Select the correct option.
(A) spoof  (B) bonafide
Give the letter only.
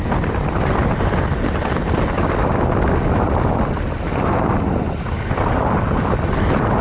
B